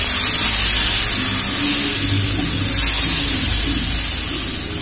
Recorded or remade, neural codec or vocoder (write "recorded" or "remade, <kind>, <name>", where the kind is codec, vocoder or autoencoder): recorded